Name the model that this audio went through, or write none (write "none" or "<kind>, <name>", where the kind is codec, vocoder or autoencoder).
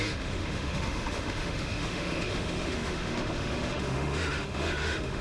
autoencoder, DAC-VAE